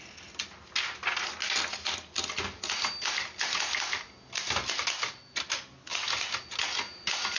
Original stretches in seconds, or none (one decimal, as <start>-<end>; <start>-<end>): 0.0-7.4